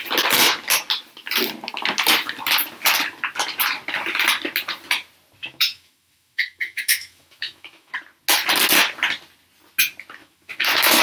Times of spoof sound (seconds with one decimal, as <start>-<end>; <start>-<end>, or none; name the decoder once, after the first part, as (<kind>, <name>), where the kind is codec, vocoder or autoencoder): 5.4-7.9 (autoencoder, DAC-VAE); 10.2-11.0